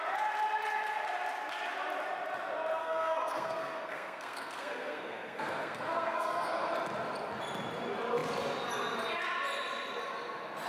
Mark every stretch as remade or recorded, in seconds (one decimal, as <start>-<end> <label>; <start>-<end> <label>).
0.0-2.8 recorded; 2.8-6.7 remade; 6.7-10.7 recorded